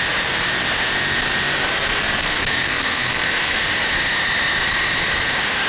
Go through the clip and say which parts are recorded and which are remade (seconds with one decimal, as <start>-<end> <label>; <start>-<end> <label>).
0.0-2.2 recorded; 2.2-3.6 remade; 3.6-5.7 recorded